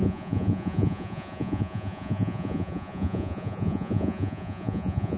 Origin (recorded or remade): remade